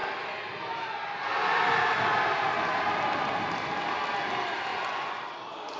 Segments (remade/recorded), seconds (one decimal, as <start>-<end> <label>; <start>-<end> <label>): 0.0-4.7 recorded; 4.7-5.2 remade; 5.2-5.8 recorded